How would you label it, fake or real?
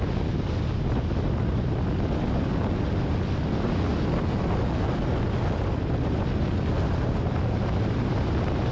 real